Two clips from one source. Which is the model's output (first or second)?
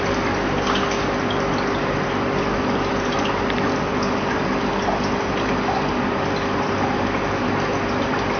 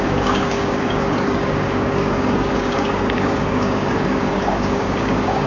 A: second